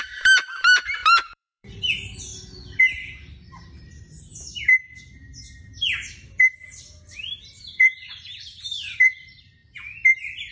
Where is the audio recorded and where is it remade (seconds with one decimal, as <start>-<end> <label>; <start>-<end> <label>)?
0.0-2.3 remade; 2.3-7.4 recorded; 7.4-9.6 remade; 9.6-10.5 recorded